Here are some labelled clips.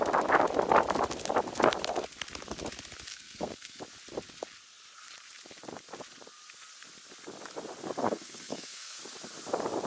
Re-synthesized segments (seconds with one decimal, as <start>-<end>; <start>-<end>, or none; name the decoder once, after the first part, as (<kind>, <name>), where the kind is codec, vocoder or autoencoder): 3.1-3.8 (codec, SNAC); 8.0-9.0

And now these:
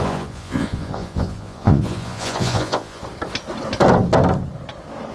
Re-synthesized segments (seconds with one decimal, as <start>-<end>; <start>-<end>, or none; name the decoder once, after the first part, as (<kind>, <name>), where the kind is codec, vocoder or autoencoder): 0.0-3.0 (vocoder, Vocos)

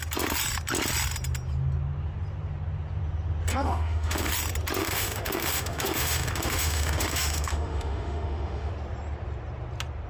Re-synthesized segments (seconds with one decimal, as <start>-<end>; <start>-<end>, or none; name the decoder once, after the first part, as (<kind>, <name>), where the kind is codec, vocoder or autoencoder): 3.5-4.3 (autoencoder, DAC-VAE); 4.8-8.7

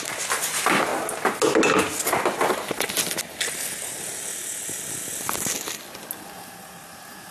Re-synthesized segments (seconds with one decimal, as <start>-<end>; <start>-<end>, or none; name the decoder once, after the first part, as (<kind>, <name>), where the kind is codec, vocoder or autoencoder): none